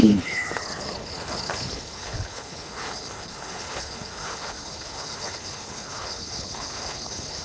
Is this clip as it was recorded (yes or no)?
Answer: no